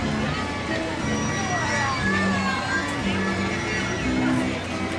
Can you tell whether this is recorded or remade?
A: recorded